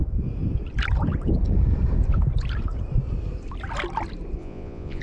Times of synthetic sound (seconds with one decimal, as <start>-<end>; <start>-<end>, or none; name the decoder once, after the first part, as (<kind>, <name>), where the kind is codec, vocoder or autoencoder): 4.4-5.0 (vocoder, Vocos)